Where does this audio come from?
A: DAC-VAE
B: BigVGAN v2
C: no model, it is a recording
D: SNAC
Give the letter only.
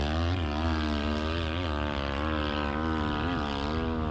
C